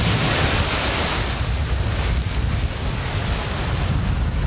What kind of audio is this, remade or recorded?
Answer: recorded